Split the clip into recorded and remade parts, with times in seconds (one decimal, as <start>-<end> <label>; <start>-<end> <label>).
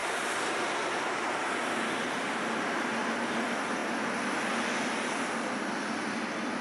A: 0.0-6.6 recorded